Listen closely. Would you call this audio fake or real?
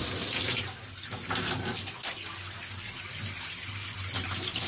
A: real